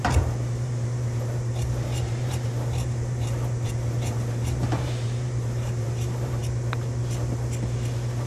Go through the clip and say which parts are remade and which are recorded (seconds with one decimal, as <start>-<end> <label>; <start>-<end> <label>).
0.0-6.4 remade; 6.4-8.3 recorded